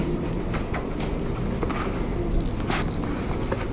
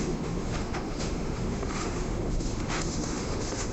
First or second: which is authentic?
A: first